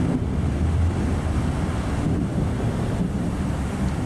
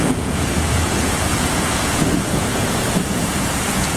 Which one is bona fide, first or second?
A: first